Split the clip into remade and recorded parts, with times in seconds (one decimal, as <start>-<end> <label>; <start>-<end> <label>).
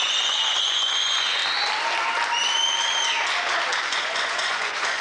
0.0-1.4 remade; 1.4-3.8 recorded; 3.8-5.0 remade